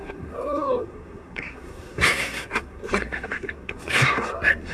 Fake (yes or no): yes